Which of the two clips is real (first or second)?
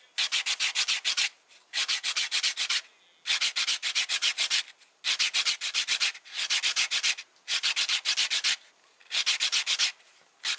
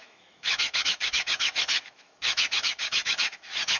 first